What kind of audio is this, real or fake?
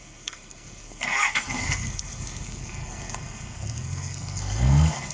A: fake